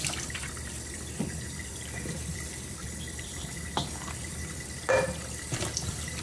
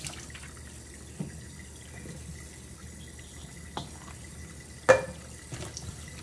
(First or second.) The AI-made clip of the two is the first